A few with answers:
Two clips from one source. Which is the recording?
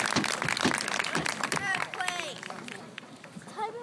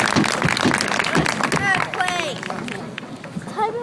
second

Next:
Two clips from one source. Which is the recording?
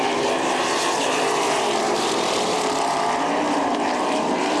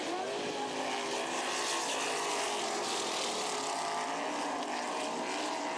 second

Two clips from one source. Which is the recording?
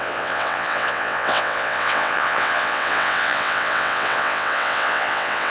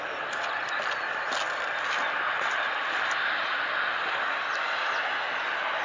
second